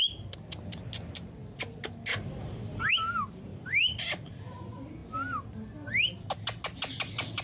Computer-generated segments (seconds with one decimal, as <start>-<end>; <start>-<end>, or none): 2.1-2.9; 3.5-4.6